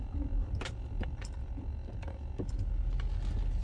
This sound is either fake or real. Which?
real